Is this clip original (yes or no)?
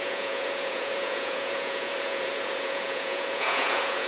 no